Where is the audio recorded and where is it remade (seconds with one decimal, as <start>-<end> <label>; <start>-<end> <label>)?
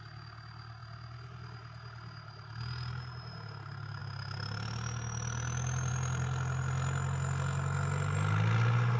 0.0-9.0 recorded